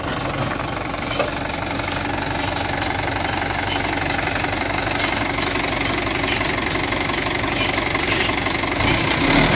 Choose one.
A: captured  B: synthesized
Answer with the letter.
A